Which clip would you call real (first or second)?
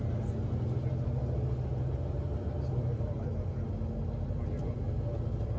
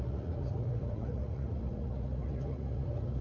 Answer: first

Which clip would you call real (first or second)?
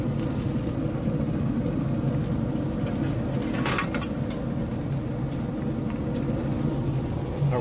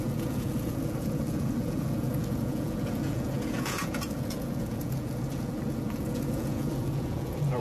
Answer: first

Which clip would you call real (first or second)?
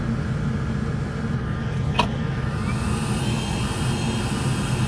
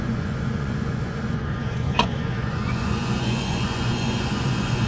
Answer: first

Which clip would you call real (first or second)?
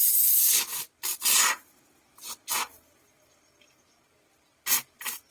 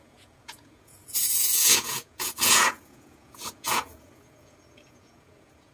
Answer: first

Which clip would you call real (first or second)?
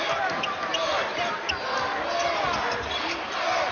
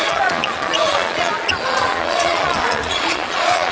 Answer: first